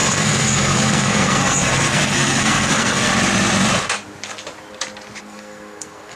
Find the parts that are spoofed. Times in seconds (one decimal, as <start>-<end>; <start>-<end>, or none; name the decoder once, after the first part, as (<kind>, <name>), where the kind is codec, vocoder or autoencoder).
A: 0.0-3.1 (codec, SNAC); 5.2-6.2